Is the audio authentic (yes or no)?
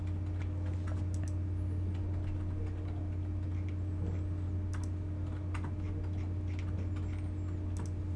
yes